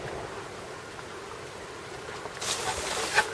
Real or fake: real